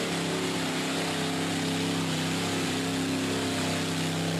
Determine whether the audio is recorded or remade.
recorded